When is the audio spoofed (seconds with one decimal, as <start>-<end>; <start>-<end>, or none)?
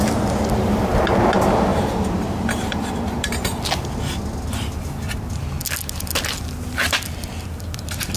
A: 1.7-3.6